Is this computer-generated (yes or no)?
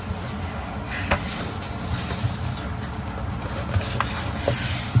no